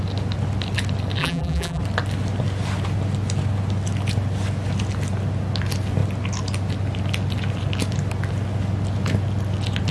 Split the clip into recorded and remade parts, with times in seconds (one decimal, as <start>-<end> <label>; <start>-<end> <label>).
0.0-1.2 recorded; 1.2-1.8 remade; 1.8-9.9 recorded